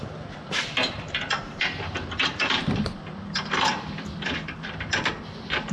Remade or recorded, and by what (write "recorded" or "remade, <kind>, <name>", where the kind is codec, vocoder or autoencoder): remade, vocoder, BigVGAN v2